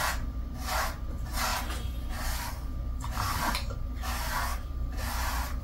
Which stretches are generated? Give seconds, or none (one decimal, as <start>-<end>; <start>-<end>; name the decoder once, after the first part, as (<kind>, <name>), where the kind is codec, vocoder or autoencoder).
4.5-5.1 (vocoder, BigVGAN v2)